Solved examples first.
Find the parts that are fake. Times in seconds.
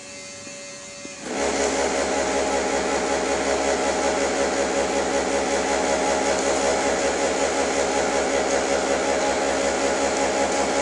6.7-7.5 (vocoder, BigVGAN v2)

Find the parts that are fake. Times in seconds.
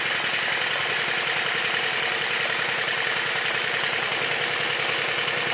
0.8-4.1 (vocoder, BigVGAN v2)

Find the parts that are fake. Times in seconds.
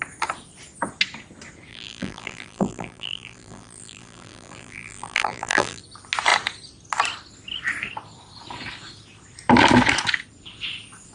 1.7-5.8 (vocoder, BigVGAN v2)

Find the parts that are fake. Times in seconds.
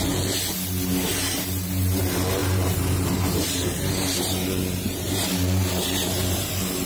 1.1-2.0 (vocoder, BigVGAN v2); 2.4-6.5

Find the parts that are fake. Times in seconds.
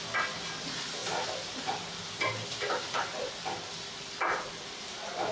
1.0-3.3 (vocoder, BigVGAN v2)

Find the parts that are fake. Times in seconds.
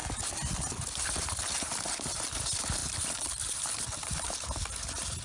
2.8-4.3 (vocoder, BigVGAN v2)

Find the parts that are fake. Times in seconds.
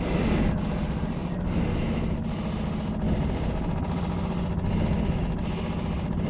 none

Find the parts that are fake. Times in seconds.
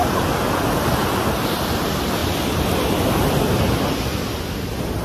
1.0-1.6 (vocoder, BigVGAN v2); 2.2-3.4